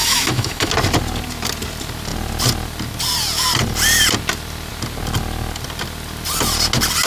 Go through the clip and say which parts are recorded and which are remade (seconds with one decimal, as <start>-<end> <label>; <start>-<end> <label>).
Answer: 0.0-0.7 remade; 0.7-7.1 recorded